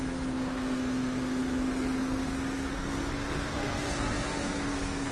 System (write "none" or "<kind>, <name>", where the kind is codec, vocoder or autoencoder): codec, SNAC